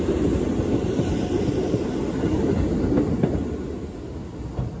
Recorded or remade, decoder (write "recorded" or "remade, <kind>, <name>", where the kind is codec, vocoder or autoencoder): recorded